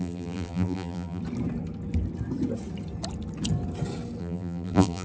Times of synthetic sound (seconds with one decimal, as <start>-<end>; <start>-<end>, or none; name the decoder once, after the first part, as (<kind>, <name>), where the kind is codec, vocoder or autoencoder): 0.0-1.2 (vocoder, BigVGAN v2); 4.2-5.0